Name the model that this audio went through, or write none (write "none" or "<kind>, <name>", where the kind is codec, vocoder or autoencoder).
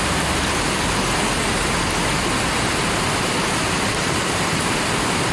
none